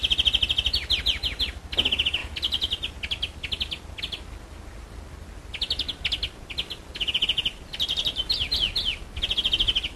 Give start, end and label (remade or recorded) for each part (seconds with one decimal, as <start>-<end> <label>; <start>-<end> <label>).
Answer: 0.0-10.0 recorded